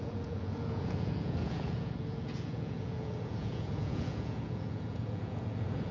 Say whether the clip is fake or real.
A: fake